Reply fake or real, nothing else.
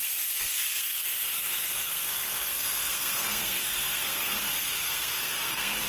fake